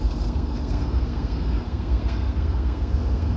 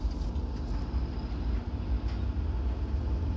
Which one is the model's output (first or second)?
first